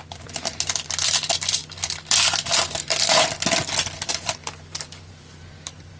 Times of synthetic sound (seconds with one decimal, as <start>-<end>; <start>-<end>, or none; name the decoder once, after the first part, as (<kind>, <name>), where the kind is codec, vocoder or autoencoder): 0.0-6.0 (vocoder, BigVGAN v2)